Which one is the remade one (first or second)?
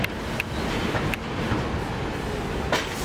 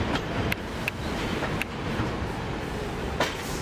second